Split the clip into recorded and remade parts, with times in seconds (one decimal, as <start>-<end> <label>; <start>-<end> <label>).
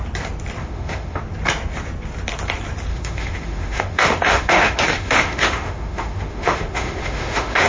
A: 0.0-0.6 recorded; 0.6-1.2 remade; 1.2-2.9 recorded; 2.9-7.7 remade